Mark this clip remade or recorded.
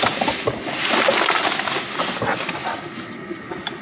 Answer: recorded